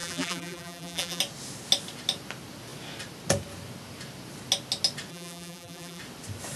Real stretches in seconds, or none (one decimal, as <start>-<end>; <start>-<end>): 1.2-5.1; 6.0-6.6